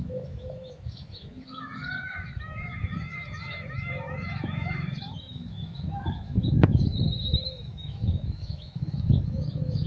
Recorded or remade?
remade